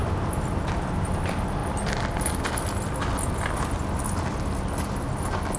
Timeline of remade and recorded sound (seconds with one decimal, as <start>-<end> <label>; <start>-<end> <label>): 0.0-5.6 recorded